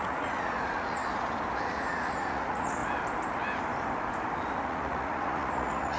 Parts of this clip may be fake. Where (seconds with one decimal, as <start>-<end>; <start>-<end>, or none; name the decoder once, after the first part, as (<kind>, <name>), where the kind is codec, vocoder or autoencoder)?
0.0-1.0 (vocoder, Vocos); 1.7-2.8; 4.6-6.0